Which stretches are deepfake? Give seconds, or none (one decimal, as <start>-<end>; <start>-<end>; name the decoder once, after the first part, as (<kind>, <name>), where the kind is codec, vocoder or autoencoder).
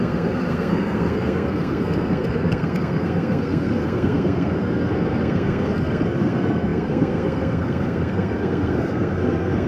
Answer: 0.0-9.7 (codec, SNAC)